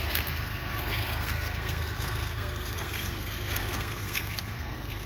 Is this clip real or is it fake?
fake